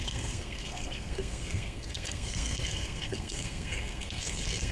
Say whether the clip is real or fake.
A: fake